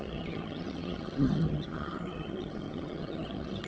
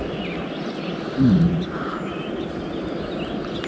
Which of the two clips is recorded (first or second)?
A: second